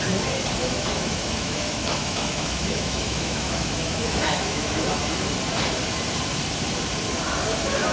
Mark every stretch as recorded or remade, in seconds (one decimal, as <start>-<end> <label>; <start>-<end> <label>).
0.0-0.6 recorded; 0.6-4.9 remade; 4.9-7.9 recorded